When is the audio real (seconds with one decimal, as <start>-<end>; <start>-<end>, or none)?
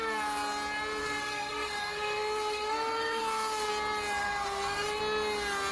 0.0-1.0; 3.7-4.2; 5.0-5.7